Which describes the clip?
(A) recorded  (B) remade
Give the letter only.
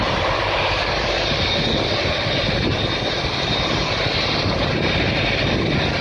A